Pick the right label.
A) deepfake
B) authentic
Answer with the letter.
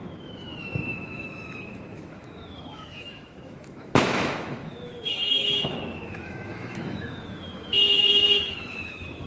A